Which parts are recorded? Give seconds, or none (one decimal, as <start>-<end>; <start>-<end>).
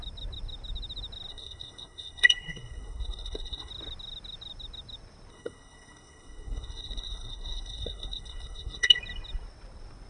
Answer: 0.0-1.3; 3.7-5.3; 9.0-10.1